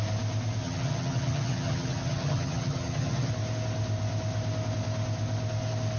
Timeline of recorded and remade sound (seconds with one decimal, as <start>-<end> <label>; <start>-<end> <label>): 0.0-0.6 recorded; 0.6-3.3 remade; 3.3-6.0 recorded